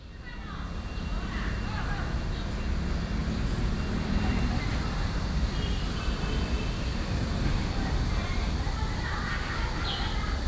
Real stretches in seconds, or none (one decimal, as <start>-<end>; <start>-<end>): 0.0-3.2; 7.3-10.5